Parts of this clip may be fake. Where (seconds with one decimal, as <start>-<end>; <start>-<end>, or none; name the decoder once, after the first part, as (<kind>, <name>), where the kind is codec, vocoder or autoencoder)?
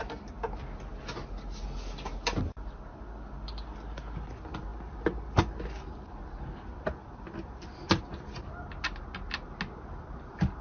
none